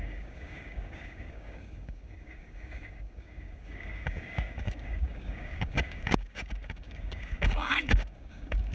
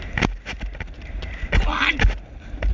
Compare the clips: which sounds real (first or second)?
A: second